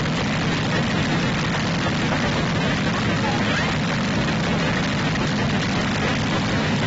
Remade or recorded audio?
recorded